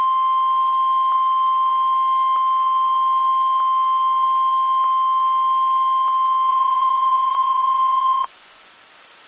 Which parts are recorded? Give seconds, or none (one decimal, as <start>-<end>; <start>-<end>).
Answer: 0.0-6.5; 8.7-9.3